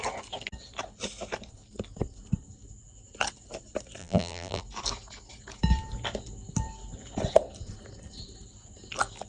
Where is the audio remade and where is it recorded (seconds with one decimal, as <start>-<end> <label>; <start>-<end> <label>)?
0.0-4.0 recorded; 4.0-4.6 remade; 4.6-9.3 recorded